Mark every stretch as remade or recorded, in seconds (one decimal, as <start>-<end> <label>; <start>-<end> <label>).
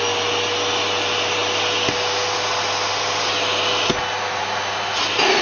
0.0-5.4 recorded